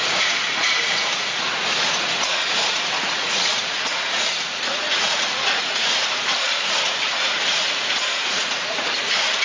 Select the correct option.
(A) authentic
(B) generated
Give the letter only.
B